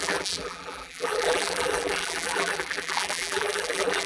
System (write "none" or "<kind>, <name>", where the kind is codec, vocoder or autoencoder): vocoder, BigVGAN v2